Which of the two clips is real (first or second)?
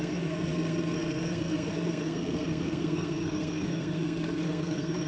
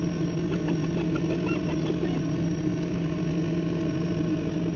second